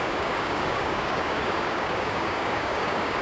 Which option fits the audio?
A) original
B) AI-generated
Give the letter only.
B